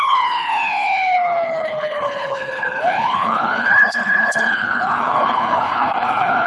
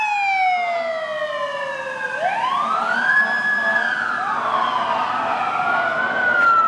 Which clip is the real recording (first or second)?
second